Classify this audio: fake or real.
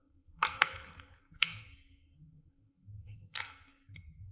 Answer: fake